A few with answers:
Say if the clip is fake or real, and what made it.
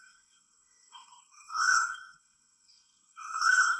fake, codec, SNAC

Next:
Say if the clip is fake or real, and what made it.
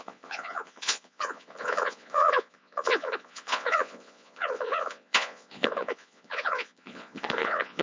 fake, vocoder, Vocos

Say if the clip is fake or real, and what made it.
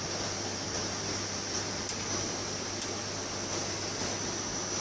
real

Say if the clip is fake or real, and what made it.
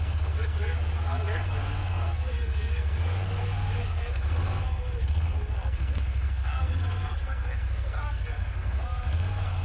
fake, codec, SNAC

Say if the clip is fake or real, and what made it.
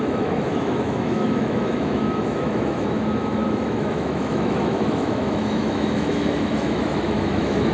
fake, autoencoder, DAC-VAE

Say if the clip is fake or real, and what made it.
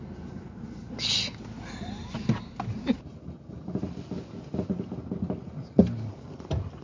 real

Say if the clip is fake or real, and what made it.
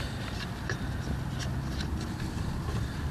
fake, vocoder, BigVGAN v2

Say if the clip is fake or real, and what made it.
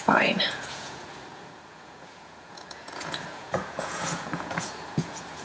fake, vocoder, Vocos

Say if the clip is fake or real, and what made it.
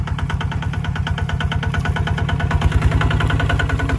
real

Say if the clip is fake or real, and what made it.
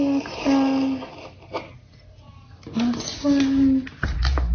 real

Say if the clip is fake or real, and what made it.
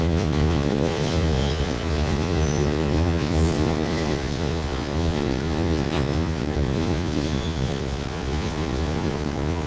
fake, vocoder, Vocos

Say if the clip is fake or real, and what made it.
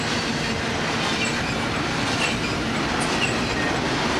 real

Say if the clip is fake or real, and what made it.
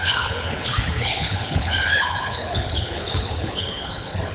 fake, codec, HILCodec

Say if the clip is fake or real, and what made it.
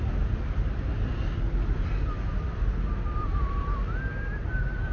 real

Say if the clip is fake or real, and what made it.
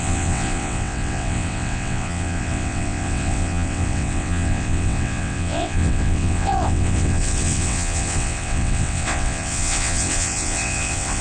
fake, vocoder, WaveNeXt